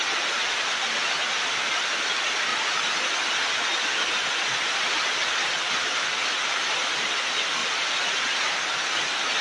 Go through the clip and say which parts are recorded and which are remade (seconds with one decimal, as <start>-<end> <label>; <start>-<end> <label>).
0.0-9.4 recorded